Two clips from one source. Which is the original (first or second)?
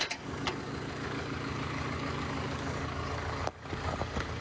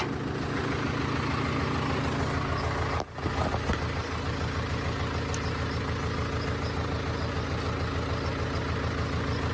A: second